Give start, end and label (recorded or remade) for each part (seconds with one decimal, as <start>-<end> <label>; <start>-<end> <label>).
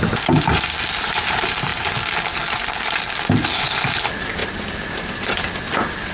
0.0-6.1 recorded